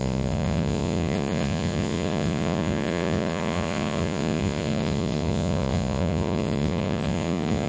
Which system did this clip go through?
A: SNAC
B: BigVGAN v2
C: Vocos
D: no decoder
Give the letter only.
C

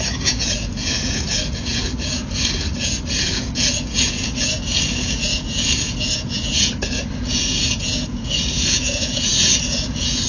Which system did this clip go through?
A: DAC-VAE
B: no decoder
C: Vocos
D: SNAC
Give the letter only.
C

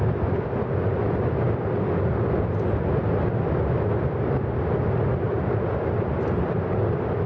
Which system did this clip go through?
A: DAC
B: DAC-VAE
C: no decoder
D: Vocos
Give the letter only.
C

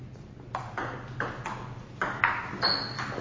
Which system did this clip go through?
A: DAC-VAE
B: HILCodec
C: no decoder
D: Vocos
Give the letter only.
C